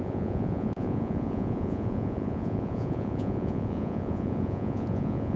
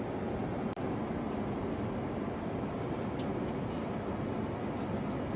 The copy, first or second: first